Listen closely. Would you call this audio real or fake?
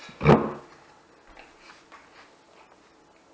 real